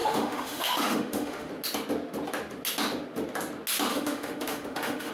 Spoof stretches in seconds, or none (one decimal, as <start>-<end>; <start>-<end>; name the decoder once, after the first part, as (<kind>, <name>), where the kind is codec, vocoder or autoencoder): 0.0-1.5 (autoencoder, DAC-VAE); 3.9-5.1